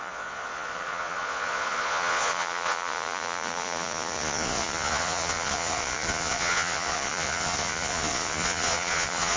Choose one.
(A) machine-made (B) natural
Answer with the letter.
A